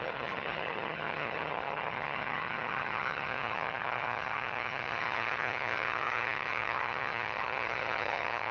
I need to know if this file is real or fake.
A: fake